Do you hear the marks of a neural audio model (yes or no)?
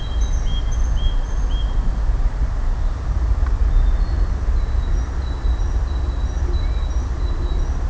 no